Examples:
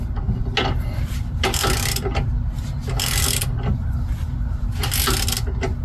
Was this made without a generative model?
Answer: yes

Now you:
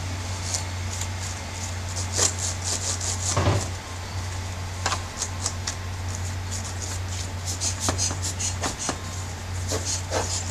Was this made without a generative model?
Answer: yes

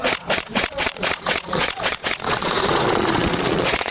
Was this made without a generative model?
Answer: no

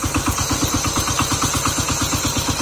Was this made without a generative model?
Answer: yes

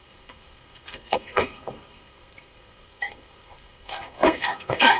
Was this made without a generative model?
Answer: no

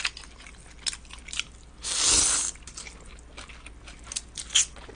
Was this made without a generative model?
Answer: yes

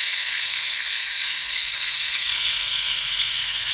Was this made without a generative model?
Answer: no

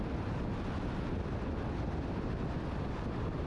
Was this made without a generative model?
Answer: yes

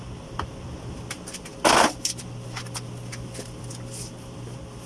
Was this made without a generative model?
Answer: yes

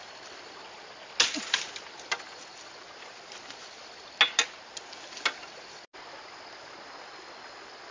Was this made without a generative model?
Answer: yes